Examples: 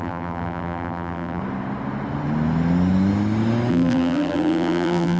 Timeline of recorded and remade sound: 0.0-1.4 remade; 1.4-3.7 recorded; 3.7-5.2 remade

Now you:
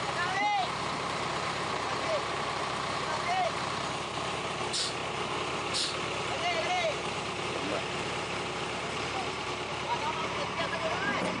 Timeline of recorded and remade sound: 0.0-5.0 remade; 5.0-6.7 recorded; 6.7-11.4 remade

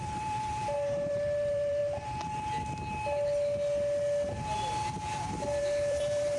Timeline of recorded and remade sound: 0.0-1.8 remade; 1.8-5.6 recorded; 5.6-6.4 remade

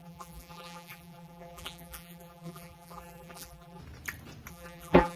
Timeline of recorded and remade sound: 0.0-3.8 remade; 3.8-4.5 recorded; 4.5-5.2 remade

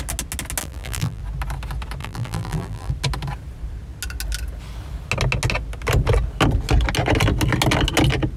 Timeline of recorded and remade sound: 0.0-0.6 recorded; 0.6-1.2 remade; 1.2-2.0 recorded; 2.0-2.9 remade; 2.9-8.4 recorded

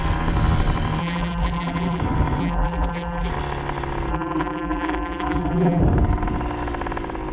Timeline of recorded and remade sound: 0.0-1.0 recorded; 1.0-2.0 remade; 2.0-2.4 recorded; 2.4-3.3 remade; 3.3-4.1 recorded; 4.1-5.8 remade; 5.8-7.3 recorded

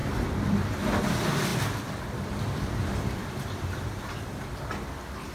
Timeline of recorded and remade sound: 0.0-1.0 remade; 1.0-1.5 recorded; 1.5-4.7 remade; 4.7-5.3 recorded

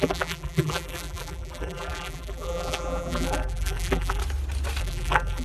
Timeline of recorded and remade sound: 0.0-4.2 remade; 4.2-4.8 recorded; 4.8-5.4 remade